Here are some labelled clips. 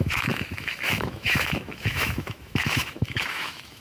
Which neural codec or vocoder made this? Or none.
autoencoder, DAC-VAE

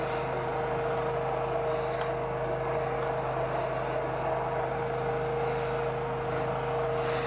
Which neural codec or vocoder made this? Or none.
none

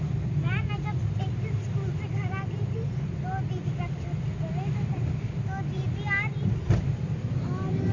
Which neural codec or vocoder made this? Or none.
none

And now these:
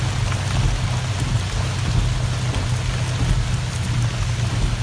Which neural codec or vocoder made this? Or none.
none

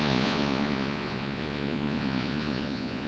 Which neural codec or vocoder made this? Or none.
vocoder, Vocos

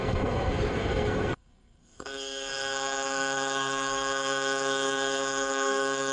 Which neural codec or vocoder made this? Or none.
codec, SNAC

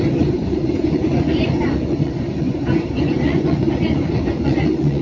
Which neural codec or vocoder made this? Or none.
vocoder, Vocos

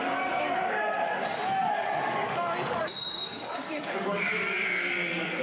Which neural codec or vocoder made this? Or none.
codec, DAC